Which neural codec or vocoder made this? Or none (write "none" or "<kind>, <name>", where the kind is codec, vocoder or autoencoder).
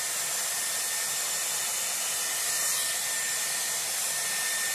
none